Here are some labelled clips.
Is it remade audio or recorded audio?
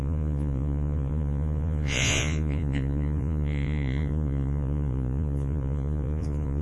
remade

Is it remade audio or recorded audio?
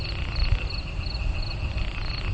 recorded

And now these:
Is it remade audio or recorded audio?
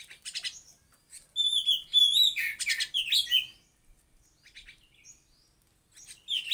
recorded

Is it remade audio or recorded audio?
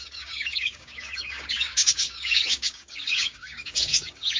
remade